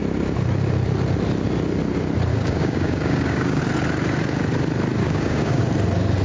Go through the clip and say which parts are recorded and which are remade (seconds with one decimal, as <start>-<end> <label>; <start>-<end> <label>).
0.0-2.3 recorded; 2.3-3.6 remade; 3.6-5.0 recorded; 5.0-5.6 remade; 5.6-6.2 recorded